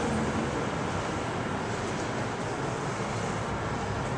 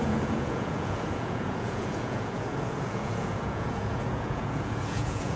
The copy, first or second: second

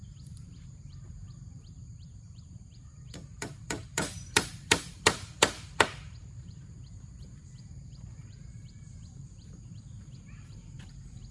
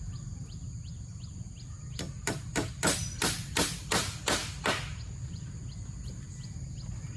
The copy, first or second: first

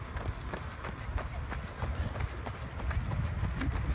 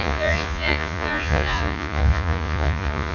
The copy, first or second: second